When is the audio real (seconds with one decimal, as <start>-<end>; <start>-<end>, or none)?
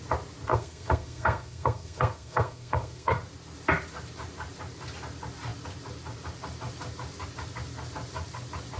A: 0.0-0.5; 3.2-8.8